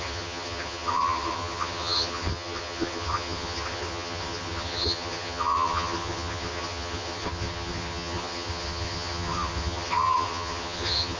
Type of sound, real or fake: fake